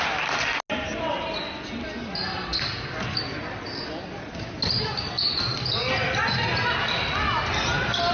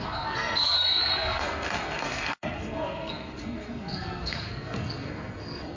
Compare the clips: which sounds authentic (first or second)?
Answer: first